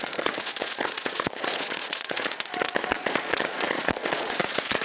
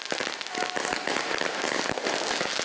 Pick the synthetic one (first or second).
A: first